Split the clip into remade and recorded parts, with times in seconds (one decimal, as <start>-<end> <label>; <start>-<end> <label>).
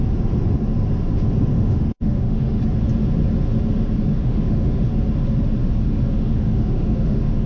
0.0-1.5 recorded; 1.5-2.6 remade; 2.6-4.1 recorded; 4.1-4.9 remade; 4.9-5.6 recorded; 5.6-7.5 remade